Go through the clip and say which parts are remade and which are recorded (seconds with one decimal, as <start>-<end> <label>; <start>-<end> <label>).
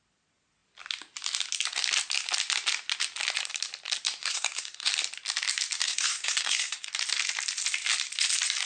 0.0-4.2 recorded; 4.2-4.9 remade; 4.9-5.8 recorded; 5.8-6.9 remade; 6.9-8.7 recorded